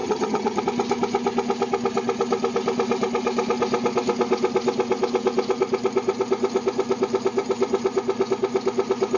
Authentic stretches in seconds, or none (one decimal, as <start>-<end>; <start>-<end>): 0.6-9.2